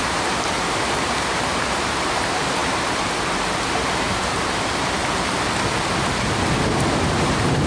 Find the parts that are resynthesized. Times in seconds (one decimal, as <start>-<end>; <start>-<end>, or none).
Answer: 0.0-5.0; 6.1-7.7